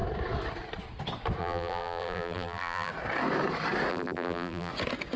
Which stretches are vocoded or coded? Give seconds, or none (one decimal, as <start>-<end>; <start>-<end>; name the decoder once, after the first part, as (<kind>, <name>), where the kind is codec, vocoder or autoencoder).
1.4-2.9 (vocoder, BigVGAN v2); 3.9-4.7

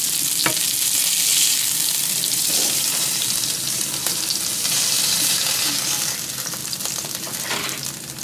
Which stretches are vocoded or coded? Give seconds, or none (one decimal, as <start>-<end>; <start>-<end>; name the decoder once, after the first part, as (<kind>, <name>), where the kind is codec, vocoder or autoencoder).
1.3-4.4 (vocoder, BigVGAN v2); 6.6-7.5

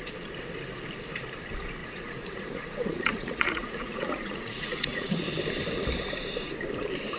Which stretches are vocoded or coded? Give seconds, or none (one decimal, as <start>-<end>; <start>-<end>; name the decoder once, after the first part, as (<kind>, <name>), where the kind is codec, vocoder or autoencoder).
1.8-5.2 (vocoder, Vocos)

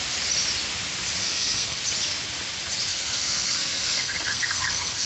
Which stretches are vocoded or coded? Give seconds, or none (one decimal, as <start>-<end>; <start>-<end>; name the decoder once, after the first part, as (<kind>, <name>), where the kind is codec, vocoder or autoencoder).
1.2-1.8 (codec, SNAC); 2.9-5.1